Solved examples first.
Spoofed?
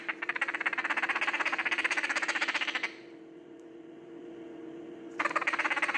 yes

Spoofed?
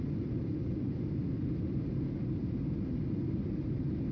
yes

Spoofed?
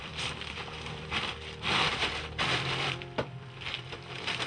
yes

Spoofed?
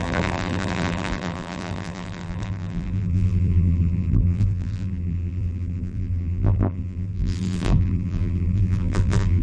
yes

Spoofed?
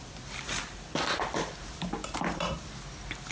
no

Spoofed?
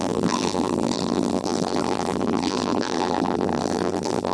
yes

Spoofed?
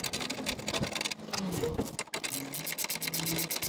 no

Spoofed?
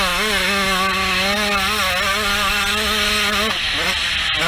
no